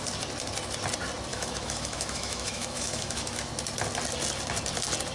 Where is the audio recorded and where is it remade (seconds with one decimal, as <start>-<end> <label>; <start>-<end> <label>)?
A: 0.0-1.3 recorded; 1.3-3.5 remade; 3.5-5.1 recorded

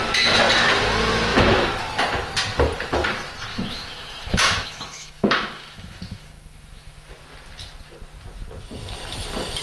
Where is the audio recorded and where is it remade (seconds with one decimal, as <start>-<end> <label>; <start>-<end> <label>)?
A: 0.0-3.5 recorded; 3.5-7.1 remade; 7.1-9.6 recorded

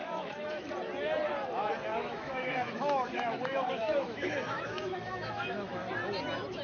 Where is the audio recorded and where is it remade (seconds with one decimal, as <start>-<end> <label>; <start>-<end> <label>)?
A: 0.0-0.7 remade; 0.7-1.9 recorded; 1.9-5.9 remade; 5.9-6.6 recorded

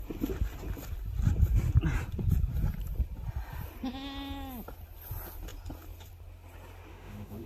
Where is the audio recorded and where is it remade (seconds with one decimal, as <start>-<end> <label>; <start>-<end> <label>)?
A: 0.0-6.9 recorded; 6.9-7.5 remade

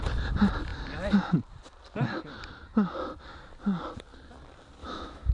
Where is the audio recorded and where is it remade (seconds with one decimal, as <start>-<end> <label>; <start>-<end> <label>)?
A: 0.0-4.8 recorded; 4.8-5.3 remade

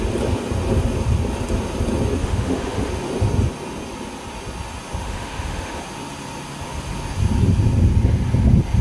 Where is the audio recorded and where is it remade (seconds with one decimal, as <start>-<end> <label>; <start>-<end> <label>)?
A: 0.0-2.2 recorded; 2.2-2.9 remade; 2.9-5.0 recorded; 5.0-5.8 remade; 5.8-8.8 recorded